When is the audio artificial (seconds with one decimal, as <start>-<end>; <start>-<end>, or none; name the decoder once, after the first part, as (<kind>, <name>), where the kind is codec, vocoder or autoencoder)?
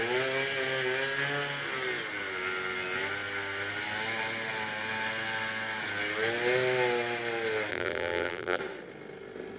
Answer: 7.7-8.6 (vocoder, BigVGAN v2)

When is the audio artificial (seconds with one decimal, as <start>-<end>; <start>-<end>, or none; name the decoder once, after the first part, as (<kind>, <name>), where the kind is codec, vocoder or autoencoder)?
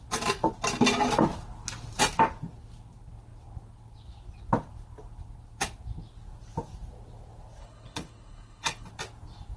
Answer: 7.6-8.9 (codec, HILCodec)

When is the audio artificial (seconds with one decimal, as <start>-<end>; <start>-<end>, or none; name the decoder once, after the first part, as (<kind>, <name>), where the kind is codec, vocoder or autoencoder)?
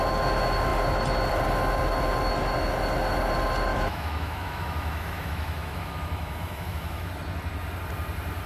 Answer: 3.7-7.1 (autoencoder, DAC-VAE)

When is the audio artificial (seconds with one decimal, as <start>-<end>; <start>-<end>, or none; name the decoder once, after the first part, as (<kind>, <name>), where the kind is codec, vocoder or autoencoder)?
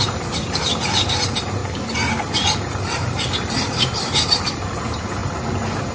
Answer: 0.0-1.6 (vocoder, BigVGAN v2); 2.2-5.9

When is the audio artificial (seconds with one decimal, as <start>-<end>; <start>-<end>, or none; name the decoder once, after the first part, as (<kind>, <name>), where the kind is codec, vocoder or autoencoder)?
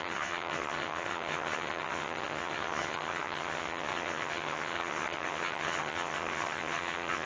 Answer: 0.0-7.3 (vocoder, HiFi-GAN)